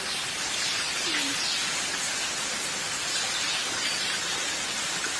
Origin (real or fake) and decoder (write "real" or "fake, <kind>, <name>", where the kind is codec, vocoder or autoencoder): real